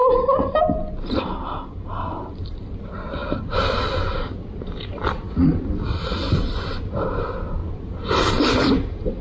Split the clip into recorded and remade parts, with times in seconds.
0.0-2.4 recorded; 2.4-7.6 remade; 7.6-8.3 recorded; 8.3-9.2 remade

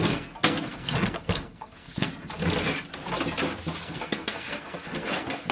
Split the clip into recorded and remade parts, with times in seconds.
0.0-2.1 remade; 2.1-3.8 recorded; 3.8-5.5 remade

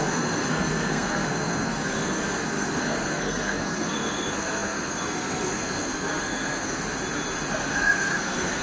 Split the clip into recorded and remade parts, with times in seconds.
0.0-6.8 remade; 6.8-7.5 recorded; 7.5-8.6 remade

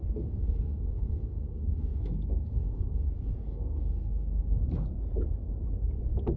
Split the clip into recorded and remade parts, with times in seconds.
0.0-4.9 remade; 4.9-6.4 recorded

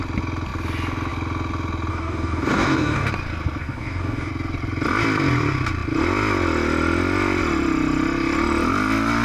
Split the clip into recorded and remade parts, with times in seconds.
0.0-1.9 recorded; 1.9-3.1 remade; 3.1-3.6 recorded; 3.6-4.3 remade; 4.3-9.2 recorded

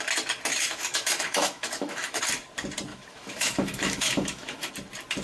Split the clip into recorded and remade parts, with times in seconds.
0.0-0.5 recorded; 0.5-2.2 remade; 2.2-2.9 recorded; 2.9-4.7 remade; 4.7-5.2 recorded

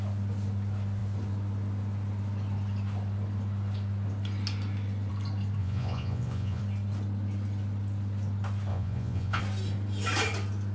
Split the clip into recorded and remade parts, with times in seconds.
0.0-5.6 recorded; 5.6-6.6 remade; 6.6-8.7 recorded; 8.7-9.4 remade; 9.4-10.7 recorded